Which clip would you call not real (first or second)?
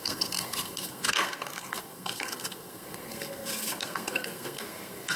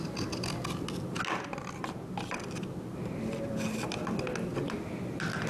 first